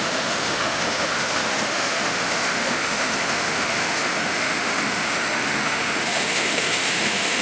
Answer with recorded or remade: remade